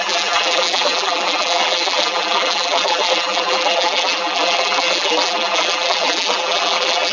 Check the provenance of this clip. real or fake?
fake